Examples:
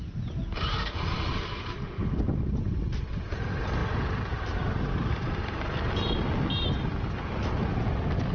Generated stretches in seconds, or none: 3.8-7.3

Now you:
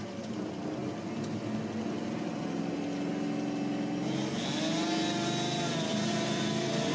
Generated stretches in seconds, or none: 5.9-6.9

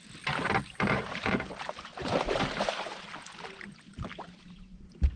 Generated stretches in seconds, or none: 0.0-1.9; 3.1-5.2

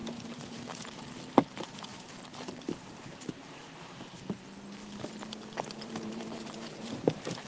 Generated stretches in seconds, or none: 0.0-0.6; 1.9-3.5; 4.8-7.5

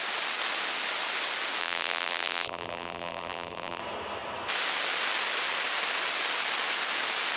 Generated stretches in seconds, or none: 1.6-3.8

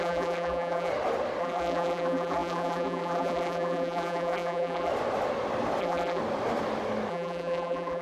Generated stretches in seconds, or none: 0.0-0.9; 1.4-4.9; 5.8-6.2; 7.1-8.0

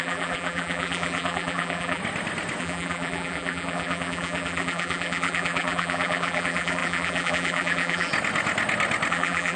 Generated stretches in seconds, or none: 0.0-2.0; 2.6-8.1; 9.1-9.6